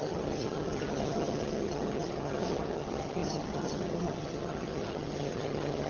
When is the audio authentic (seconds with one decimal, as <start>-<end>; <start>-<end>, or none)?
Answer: none